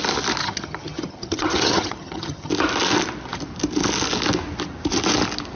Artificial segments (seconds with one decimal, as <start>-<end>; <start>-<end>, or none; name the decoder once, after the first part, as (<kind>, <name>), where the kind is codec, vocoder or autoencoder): 0.4-2.5 (vocoder, HiFi-GAN)